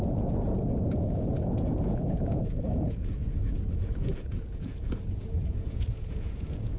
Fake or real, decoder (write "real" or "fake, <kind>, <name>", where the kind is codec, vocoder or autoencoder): fake, vocoder, Vocos